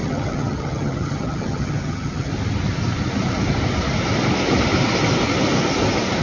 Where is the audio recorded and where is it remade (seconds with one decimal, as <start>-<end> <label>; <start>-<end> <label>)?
0.0-2.3 remade; 2.3-6.2 recorded